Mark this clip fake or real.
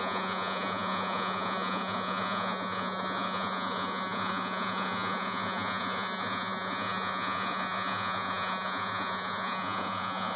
fake